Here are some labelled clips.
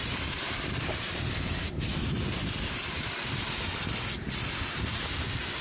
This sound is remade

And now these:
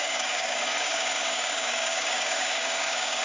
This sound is remade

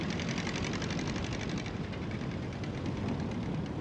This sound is recorded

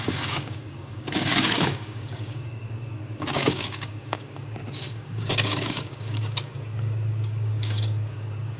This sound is remade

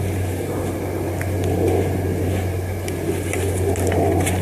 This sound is recorded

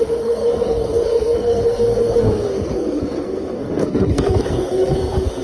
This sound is remade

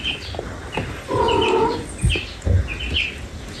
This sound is recorded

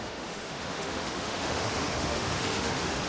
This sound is remade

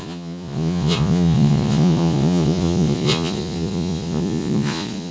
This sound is remade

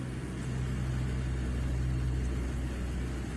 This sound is recorded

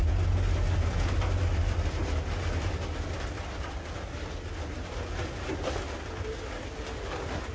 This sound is recorded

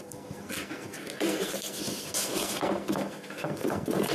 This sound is remade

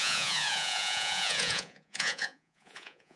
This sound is remade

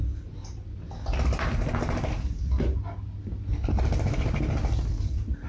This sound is recorded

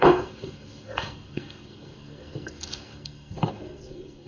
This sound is remade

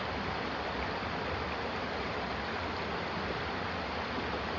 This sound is recorded